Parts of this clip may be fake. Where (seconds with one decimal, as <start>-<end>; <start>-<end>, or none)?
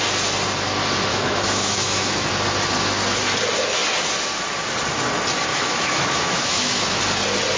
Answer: 1.1-2.3; 5.5-7.0